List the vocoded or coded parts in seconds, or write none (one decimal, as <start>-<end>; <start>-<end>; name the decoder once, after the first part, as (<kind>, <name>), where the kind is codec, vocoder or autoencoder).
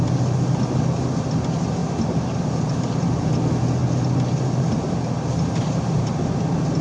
none